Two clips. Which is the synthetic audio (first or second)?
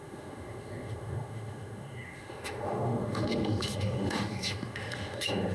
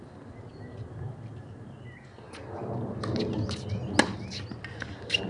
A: first